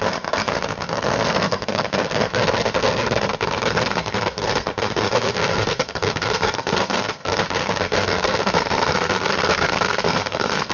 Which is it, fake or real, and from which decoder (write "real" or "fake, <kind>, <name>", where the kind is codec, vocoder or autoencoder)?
fake, codec, SNAC